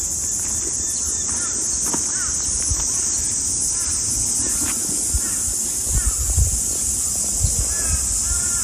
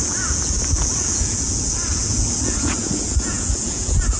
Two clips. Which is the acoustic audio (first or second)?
first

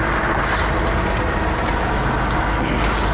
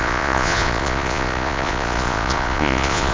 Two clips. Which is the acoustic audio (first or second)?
first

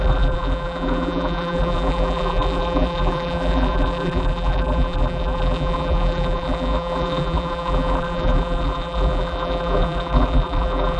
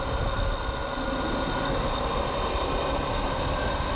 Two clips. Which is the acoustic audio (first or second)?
second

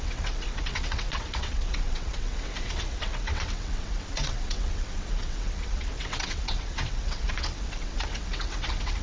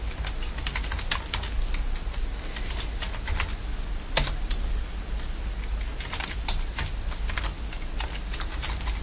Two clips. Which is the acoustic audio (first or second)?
second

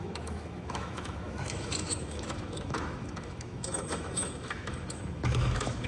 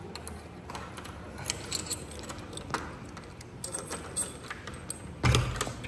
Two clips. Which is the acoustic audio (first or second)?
second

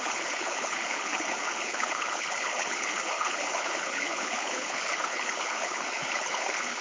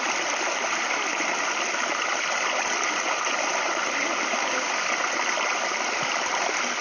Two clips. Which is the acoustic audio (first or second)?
second